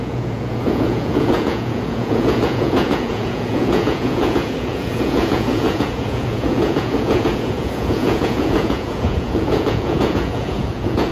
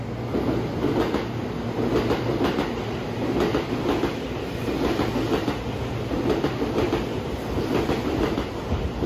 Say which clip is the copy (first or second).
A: first